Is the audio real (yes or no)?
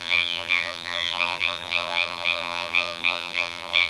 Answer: no